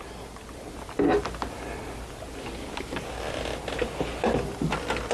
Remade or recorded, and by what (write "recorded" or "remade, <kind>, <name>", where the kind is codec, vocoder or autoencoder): recorded